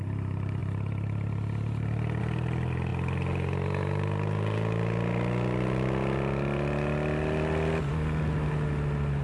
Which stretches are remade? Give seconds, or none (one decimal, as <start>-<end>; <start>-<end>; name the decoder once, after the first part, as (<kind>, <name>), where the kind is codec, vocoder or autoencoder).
none